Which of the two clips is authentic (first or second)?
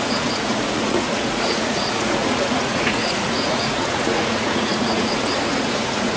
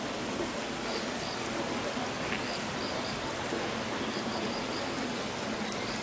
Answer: second